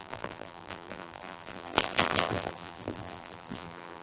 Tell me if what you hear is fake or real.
fake